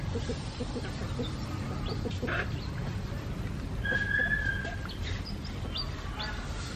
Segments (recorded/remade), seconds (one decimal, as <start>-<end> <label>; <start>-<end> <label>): 0.0-6.8 recorded